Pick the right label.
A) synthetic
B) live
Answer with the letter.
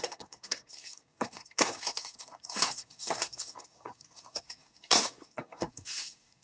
A